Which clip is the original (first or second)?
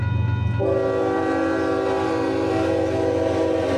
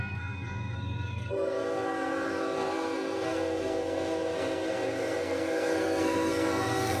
first